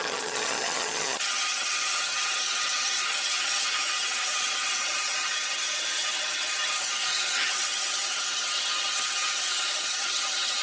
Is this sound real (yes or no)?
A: no